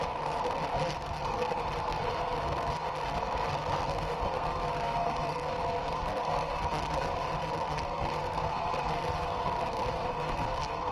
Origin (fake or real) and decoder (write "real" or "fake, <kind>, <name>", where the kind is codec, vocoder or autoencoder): fake, codec, SNAC